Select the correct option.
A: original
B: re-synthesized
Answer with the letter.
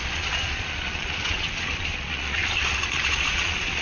B